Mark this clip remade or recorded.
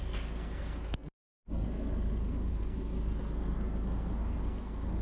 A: remade